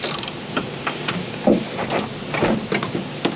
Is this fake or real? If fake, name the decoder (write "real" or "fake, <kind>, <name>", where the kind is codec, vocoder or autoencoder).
real